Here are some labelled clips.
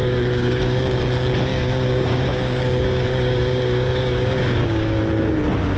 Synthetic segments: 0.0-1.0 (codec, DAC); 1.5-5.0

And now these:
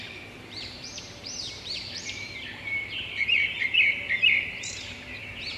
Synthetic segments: 0.0-5.6 (vocoder, BigVGAN v2)